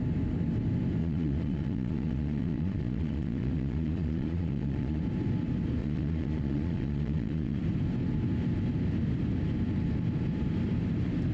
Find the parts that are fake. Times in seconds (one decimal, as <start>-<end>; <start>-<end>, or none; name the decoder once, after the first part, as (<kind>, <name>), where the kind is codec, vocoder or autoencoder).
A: 1.0-5.0 (vocoder, Vocos); 5.8-7.6